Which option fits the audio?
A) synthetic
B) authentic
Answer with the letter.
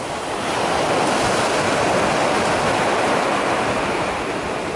B